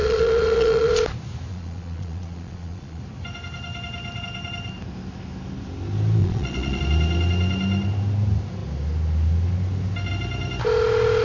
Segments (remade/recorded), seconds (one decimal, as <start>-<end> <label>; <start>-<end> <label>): 0.0-0.9 remade; 0.9-1.5 recorded; 1.5-3.0 remade; 3.0-6.2 recorded; 6.2-6.8 remade; 6.8-11.2 recorded